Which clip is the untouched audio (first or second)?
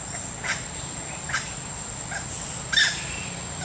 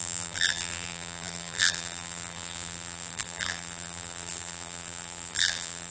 first